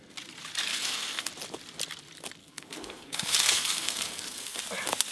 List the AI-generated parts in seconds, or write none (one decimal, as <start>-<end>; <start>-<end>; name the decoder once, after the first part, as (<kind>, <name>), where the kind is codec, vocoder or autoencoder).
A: 0.7-1.3 (codec, SNAC); 2.4-4.6